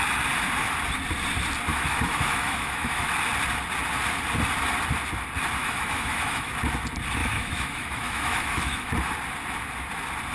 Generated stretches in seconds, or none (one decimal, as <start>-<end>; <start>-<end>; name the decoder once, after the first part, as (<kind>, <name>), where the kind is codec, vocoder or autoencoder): 1.7-3.1 (autoencoder, DAC-VAE); 5.6-6.5; 7.2-8.9